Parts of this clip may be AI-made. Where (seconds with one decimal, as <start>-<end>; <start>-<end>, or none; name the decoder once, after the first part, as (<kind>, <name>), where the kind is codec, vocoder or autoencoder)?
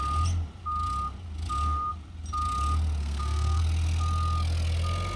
3.0-3.6 (codec, SNAC)